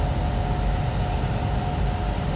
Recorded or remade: recorded